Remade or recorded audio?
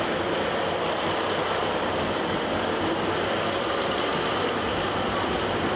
recorded